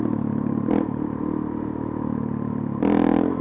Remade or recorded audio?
recorded